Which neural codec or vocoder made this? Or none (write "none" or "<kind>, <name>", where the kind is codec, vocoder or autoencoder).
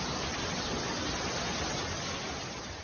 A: none